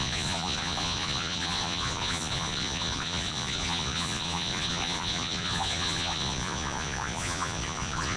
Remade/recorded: remade